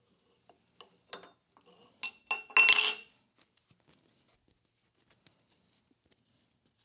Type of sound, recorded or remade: recorded